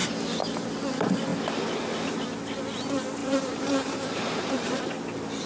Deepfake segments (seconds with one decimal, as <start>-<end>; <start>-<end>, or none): 3.2-5.0